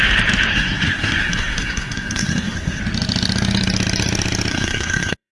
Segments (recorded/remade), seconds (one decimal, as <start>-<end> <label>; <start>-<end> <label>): 0.0-0.5 recorded; 0.5-2.8 remade; 2.8-4.5 recorded; 4.5-5.3 remade